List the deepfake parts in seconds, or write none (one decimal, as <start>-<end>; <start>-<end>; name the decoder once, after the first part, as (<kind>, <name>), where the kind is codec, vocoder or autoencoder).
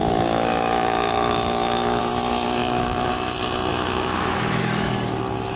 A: 0.0-2.0 (autoencoder, DAC-VAE); 2.6-3.1; 3.7-4.6